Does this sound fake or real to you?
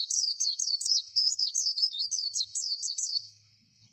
fake